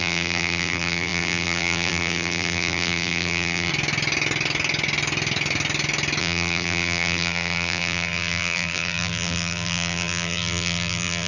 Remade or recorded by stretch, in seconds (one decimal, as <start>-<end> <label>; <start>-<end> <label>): 0.0-3.7 remade; 3.7-6.2 recorded; 6.2-11.3 remade